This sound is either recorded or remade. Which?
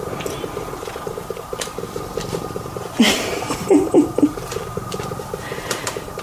remade